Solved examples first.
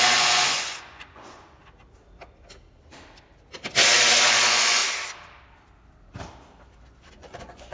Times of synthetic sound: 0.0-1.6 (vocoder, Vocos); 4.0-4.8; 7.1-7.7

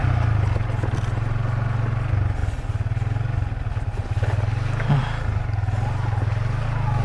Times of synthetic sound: none

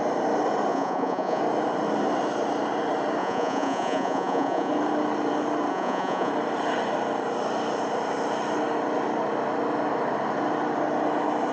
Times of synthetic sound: 0.7-1.4 (vocoder, Vocos); 3.2-4.7; 5.7-6.3

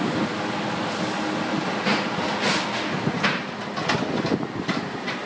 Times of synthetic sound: none

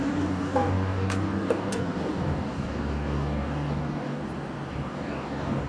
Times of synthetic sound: 0.0-4.2 (codec, DAC); 4.7-5.7

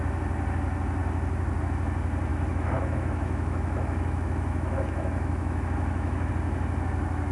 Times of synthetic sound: 2.3-6.3 (autoencoder, DAC-VAE)

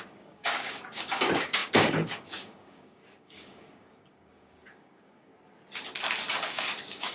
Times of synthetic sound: 0.0-5.3 (codec, DAC); 6.3-7.1